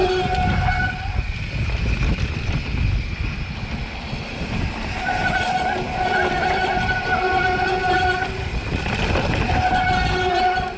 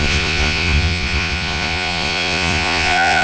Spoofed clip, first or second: second